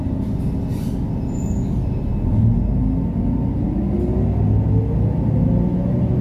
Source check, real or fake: real